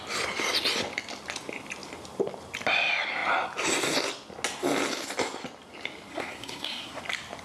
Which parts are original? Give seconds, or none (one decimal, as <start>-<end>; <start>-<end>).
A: 0.0-6.1; 7.0-7.4